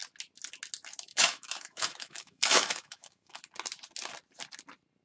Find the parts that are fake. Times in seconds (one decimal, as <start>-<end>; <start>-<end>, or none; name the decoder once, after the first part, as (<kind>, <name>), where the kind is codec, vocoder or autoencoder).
1.1-3.4 (autoencoder, DAC-VAE)